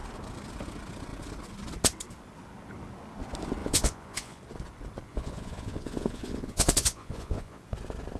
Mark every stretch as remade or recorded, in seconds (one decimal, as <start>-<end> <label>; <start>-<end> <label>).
0.0-3.6 recorded; 3.6-4.4 remade; 4.4-5.1 recorded; 5.1-7.6 remade; 7.6-8.2 recorded